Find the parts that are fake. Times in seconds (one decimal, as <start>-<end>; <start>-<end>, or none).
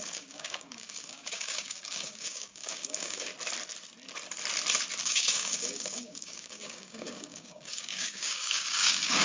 0.0-3.3; 5.0-9.2